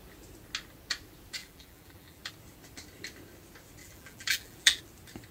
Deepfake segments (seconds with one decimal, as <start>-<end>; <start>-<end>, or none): 1.4-2.3; 3.8-4.8